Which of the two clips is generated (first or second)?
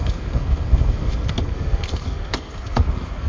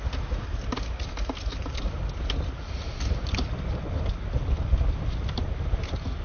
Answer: first